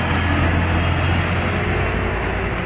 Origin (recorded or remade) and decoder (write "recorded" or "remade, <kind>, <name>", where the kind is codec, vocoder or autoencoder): recorded